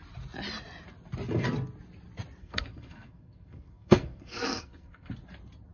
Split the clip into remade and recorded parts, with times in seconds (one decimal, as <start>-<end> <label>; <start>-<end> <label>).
0.0-2.4 recorded; 2.4-5.1 remade; 5.1-5.7 recorded